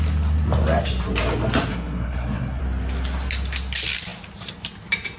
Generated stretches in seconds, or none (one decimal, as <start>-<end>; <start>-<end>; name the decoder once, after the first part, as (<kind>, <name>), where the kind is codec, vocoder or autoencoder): 1.7-2.6 (codec, SNAC)